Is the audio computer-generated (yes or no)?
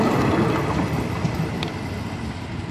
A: no